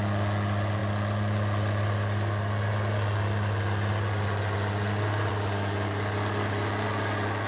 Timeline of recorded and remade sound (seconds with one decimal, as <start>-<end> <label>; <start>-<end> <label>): 0.0-7.5 recorded